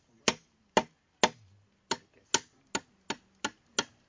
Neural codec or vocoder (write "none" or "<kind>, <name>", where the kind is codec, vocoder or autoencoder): none